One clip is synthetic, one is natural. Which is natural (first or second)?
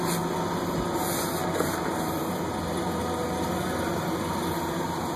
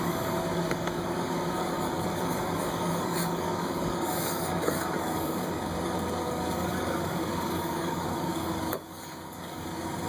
first